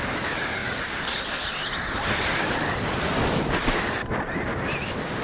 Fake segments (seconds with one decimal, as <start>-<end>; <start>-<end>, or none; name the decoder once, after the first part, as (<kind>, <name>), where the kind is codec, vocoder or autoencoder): 0.6-3.6 (vocoder, BigVGAN v2)